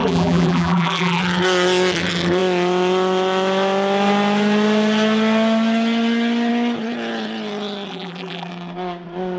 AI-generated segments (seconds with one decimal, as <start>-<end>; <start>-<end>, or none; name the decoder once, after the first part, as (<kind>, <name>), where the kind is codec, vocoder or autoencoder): 0.0-1.2 (vocoder, BigVGAN v2); 7.9-8.5